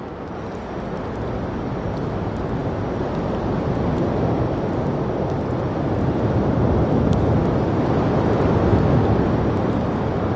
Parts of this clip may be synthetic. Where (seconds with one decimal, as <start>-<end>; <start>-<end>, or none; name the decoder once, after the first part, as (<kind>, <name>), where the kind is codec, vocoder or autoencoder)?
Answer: none

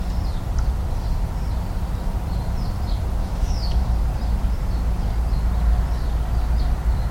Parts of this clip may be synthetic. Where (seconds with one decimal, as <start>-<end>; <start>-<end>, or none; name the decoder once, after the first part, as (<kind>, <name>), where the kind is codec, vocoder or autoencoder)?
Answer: 3.2-3.8 (autoencoder, DAC-VAE)

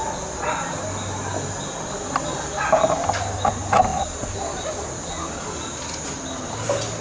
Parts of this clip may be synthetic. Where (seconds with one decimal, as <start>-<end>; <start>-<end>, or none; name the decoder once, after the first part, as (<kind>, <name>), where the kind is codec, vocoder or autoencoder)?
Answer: none

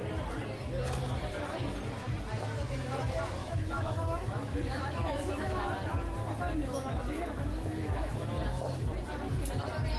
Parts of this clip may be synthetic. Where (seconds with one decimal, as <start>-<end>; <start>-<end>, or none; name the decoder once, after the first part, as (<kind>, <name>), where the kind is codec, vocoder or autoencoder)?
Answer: 3.4-5.6 (autoencoder, DAC-VAE); 6.6-8.3

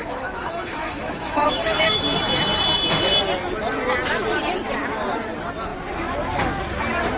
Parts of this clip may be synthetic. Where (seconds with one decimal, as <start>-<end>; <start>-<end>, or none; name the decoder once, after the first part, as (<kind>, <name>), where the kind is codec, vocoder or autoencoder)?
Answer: 0.0-2.0 (autoencoder, DAC-VAE)

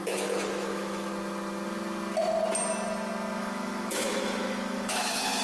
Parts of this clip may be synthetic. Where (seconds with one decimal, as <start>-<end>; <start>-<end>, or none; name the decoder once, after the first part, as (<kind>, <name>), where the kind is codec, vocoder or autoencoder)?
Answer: 0.0-1.1 (autoencoder, DAC-VAE); 3.4-5.4

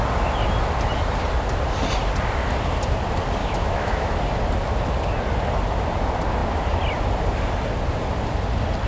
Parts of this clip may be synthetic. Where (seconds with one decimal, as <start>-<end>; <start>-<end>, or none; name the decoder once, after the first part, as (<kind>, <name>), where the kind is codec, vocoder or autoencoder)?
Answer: 3.4-4.2 (autoencoder, DAC-VAE)

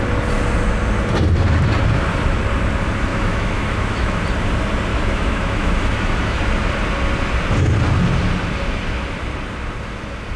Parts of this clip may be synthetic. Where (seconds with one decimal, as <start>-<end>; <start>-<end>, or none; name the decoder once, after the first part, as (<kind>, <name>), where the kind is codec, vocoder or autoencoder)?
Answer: 3.1-4.2 (autoencoder, DAC-VAE); 4.9-6.4